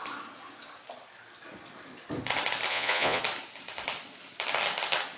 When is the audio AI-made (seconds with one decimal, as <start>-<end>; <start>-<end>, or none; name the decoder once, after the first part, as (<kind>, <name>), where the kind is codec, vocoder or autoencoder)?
2.7-3.2 (vocoder, Vocos)